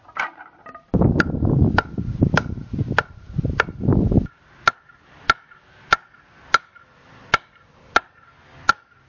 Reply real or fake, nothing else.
real